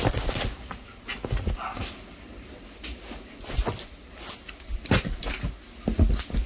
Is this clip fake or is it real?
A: real